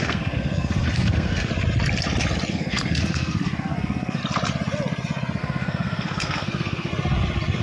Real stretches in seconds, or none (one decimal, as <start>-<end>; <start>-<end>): 1.5-2.5; 4.2-5.4; 6.9-7.6